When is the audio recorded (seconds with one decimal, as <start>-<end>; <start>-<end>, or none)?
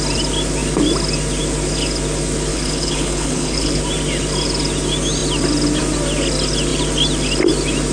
0.0-2.5; 3.8-7.9